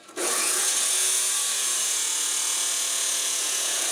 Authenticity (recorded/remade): remade